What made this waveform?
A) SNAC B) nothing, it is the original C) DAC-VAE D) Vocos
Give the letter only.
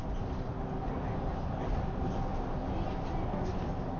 B